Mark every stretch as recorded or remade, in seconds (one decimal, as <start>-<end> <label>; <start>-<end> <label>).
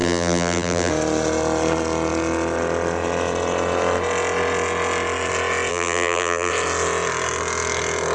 0.0-0.9 remade; 0.9-5.7 recorded; 5.7-6.5 remade; 6.5-8.1 recorded